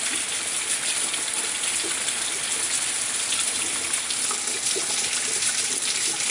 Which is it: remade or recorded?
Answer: recorded